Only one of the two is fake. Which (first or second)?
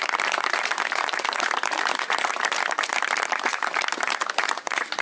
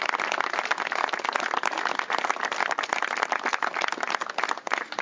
first